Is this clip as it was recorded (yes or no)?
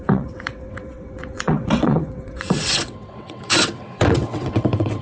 no